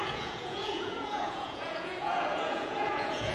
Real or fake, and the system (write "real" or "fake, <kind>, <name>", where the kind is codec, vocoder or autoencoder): fake, vocoder, Vocos